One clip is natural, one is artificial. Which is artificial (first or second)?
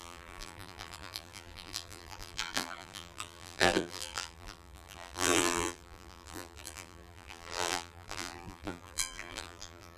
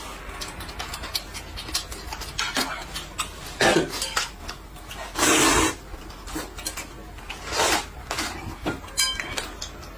first